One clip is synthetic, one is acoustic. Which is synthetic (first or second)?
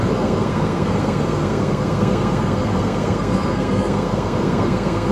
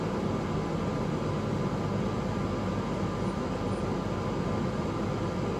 first